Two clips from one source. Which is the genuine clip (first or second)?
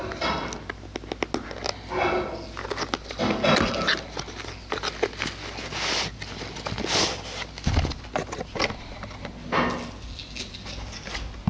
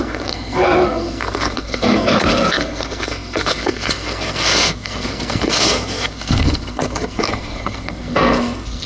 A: first